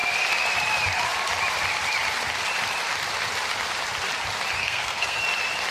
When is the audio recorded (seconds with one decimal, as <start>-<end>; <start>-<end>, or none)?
0.0-4.6; 5.2-5.7